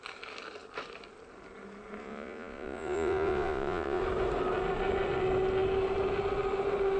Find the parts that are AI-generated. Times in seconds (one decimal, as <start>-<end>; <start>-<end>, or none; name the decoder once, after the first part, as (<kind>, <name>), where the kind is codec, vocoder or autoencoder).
2.0-4.0 (vocoder, Vocos)